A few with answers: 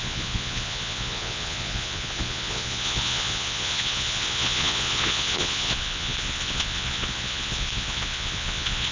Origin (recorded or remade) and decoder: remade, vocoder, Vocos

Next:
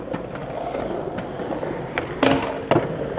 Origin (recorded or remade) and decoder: recorded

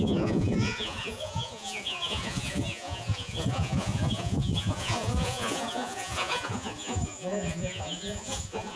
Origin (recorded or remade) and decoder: remade, vocoder, Vocos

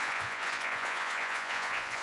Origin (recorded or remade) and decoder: remade, vocoder, Vocos